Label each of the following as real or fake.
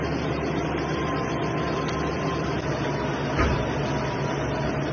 real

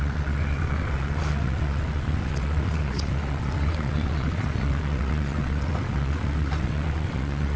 fake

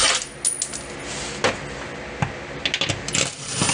real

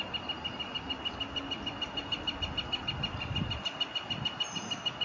real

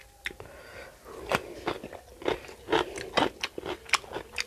real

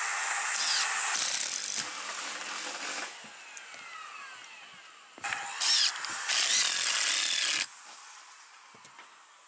real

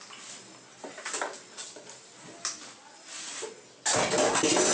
real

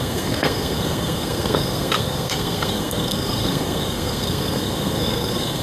fake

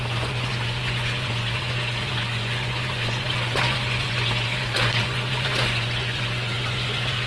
fake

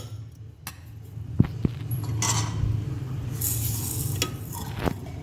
real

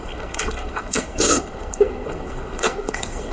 fake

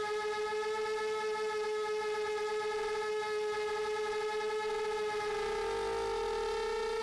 real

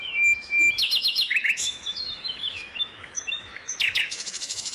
fake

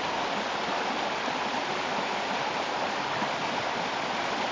real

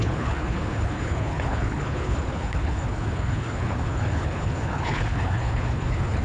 fake